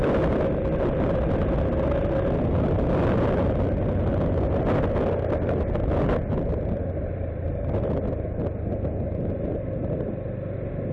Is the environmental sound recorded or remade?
recorded